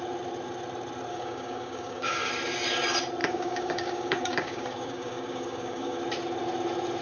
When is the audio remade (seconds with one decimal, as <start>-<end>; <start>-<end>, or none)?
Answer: 1.1-2.3; 3.2-6.0